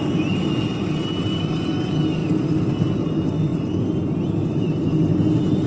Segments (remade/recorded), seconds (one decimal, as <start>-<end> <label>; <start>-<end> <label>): 0.0-5.7 recorded